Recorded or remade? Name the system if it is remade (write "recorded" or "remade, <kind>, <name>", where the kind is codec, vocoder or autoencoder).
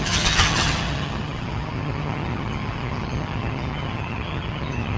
remade, vocoder, HiFi-GAN